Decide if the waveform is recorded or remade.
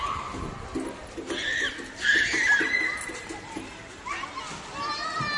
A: recorded